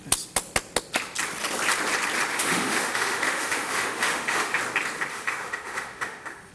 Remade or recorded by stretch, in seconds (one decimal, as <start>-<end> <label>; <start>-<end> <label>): 0.0-2.3 recorded; 2.3-4.6 remade; 4.6-5.1 recorded; 5.1-6.5 remade